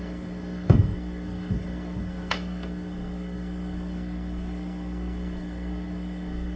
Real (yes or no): no